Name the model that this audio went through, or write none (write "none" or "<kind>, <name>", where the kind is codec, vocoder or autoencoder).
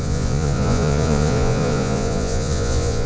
vocoder, Vocos